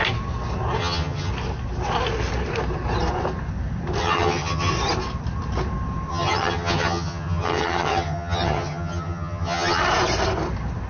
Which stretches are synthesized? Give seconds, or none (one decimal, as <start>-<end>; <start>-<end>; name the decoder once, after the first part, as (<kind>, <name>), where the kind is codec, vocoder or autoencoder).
0.8-1.3 (vocoder, HiFi-GAN); 4.0-4.7; 6.1-9.8